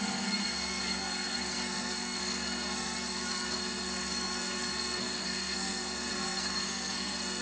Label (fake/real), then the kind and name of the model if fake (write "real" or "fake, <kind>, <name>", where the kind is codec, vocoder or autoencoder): fake, codec, SNAC